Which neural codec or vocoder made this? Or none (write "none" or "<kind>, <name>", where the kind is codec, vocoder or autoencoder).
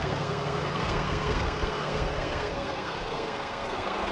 codec, SNAC